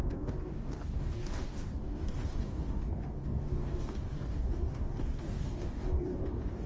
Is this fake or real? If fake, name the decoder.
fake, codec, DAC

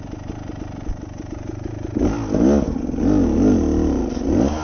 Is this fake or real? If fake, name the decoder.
real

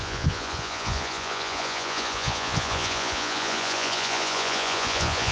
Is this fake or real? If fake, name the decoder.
fake, vocoder, Vocos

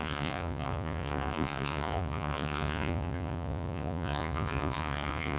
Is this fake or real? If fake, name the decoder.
fake, vocoder, Vocos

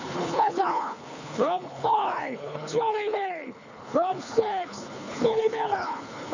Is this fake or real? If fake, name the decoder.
fake, codec, HILCodec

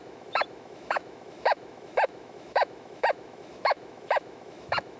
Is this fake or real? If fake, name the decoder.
fake, autoencoder, DAC-VAE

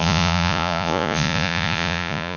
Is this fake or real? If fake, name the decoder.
fake, vocoder, Vocos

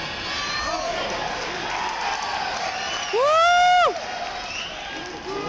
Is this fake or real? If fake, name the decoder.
real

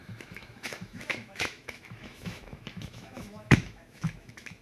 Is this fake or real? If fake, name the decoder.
fake, autoencoder, DAC-VAE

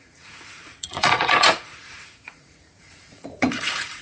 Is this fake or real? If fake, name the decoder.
fake, vocoder, Vocos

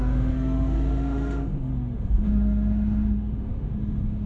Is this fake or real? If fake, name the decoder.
fake, autoencoder, DAC-VAE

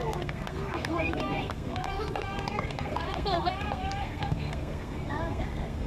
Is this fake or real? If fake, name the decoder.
fake, codec, SNAC